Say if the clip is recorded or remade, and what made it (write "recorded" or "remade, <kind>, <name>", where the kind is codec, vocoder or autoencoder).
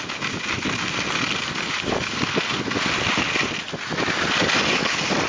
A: recorded